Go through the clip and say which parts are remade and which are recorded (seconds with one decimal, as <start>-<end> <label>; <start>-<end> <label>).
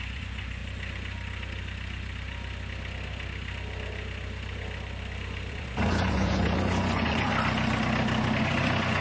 0.0-0.6 remade; 0.6-5.5 recorded; 5.5-7.3 remade; 7.3-8.4 recorded; 8.4-9.0 remade